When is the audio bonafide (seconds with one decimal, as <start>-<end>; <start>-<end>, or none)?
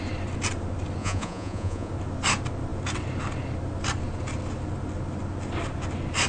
0.0-1.0; 1.9-6.3